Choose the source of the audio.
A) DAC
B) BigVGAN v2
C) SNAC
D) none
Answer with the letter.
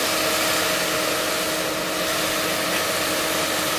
D